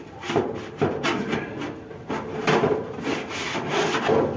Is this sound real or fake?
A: real